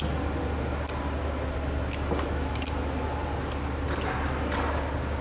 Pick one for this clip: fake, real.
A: real